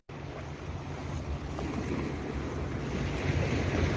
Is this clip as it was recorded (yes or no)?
yes